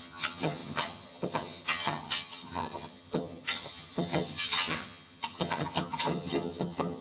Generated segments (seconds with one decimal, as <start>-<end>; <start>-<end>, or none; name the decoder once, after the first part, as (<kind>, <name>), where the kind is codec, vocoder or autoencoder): 0.0-7.0 (vocoder, HiFi-GAN)